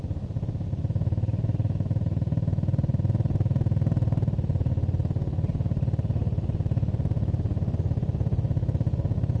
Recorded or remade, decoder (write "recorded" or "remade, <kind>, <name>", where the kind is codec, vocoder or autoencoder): recorded